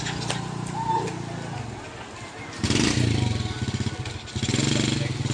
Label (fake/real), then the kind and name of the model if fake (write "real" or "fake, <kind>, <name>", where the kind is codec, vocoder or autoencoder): real